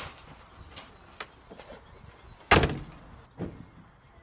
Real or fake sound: real